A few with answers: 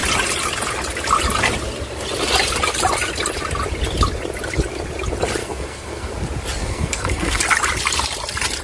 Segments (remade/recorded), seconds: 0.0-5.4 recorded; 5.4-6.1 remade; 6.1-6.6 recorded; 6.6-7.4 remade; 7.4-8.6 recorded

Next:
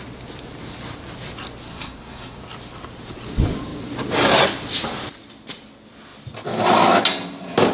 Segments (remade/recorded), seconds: 0.0-1.7 recorded; 1.7-2.4 remade; 2.4-7.7 recorded

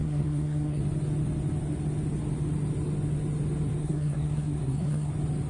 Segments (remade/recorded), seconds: 0.0-0.8 remade; 0.8-3.8 recorded; 3.8-5.1 remade; 5.1-5.5 recorded

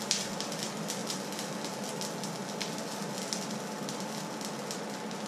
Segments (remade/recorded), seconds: 0.0-5.3 recorded

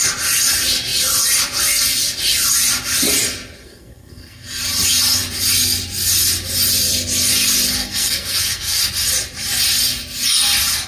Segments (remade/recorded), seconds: 0.0-3.6 recorded; 3.6-4.6 remade; 4.6-7.8 recorded; 7.8-8.8 remade; 8.8-10.9 recorded

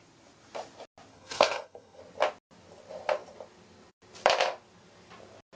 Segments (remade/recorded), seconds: 0.0-1.1 recorded; 1.1-2.0 remade; 2.0-5.6 recorded